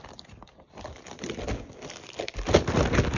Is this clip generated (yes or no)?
no